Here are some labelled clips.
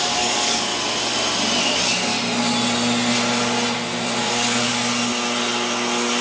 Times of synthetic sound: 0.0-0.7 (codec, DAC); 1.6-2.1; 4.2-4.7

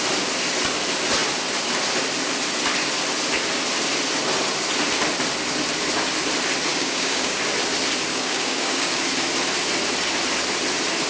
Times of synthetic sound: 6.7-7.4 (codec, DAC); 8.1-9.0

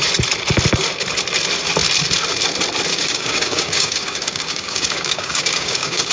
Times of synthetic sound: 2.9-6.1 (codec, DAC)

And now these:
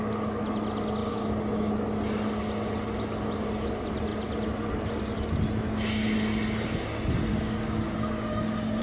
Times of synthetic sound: 1.0-1.7 (codec, DAC); 7.3-8.8

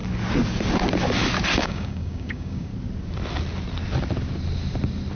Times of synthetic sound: 1.6-2.7 (codec, DAC)